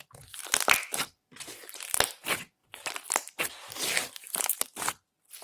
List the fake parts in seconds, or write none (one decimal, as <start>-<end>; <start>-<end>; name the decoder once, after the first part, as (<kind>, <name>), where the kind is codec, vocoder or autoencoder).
none